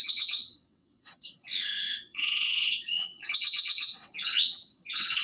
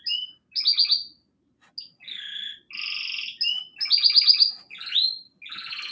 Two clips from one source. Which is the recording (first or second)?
second